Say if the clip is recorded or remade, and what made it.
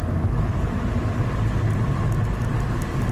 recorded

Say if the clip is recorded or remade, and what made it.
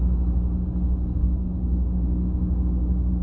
recorded